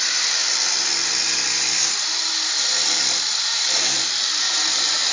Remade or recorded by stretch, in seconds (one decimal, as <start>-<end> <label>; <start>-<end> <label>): 0.0-5.1 recorded